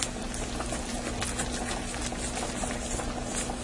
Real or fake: real